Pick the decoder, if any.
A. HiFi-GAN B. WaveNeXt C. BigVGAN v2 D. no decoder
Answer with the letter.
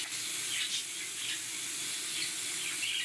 D